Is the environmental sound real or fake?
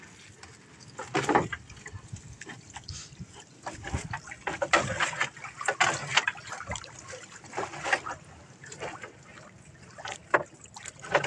real